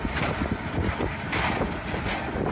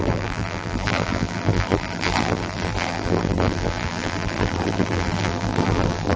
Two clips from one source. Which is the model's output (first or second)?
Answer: second